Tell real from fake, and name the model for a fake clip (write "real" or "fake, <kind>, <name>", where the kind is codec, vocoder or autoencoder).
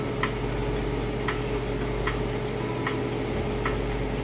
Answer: real